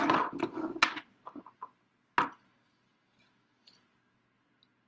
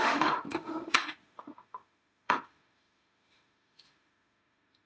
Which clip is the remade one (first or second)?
second